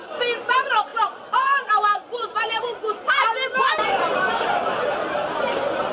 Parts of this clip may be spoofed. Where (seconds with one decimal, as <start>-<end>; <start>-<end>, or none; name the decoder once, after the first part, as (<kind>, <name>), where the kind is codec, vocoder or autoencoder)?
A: 0.9-2.6 (vocoder, BigVGAN v2)